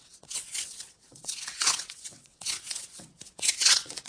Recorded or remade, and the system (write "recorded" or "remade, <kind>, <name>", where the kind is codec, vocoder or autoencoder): remade, vocoder, WaveNeXt